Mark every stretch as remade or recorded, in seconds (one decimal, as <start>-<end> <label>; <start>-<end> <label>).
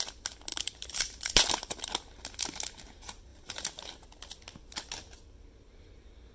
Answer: 0.0-0.5 recorded; 0.5-1.9 remade; 1.9-3.3 recorded; 3.3-3.9 remade; 3.9-6.3 recorded